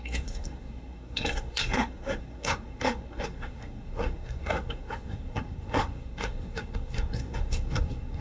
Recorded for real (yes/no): no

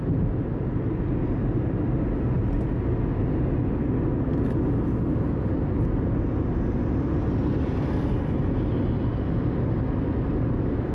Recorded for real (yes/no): yes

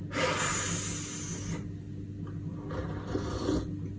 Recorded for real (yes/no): yes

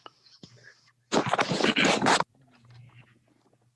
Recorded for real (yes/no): yes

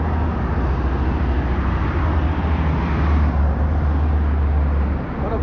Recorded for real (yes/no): yes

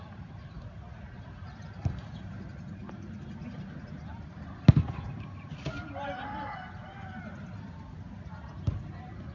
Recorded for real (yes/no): yes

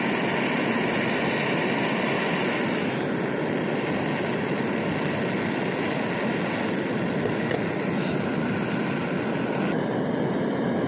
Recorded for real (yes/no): yes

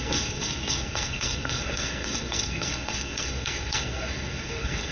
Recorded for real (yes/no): no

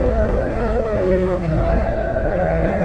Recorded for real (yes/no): no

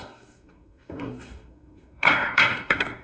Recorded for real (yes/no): no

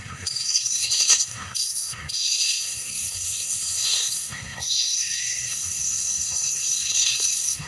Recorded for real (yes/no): no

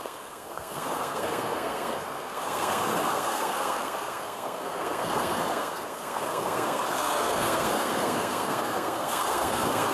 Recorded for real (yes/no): no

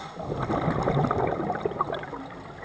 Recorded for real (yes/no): yes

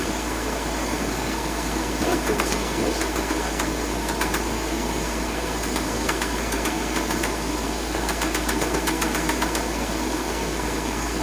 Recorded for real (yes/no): no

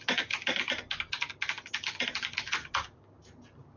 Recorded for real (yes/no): yes